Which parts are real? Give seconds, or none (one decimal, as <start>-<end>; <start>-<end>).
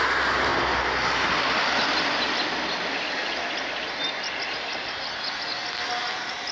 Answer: 0.0-6.5